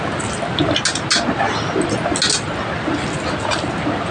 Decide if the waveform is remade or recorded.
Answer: recorded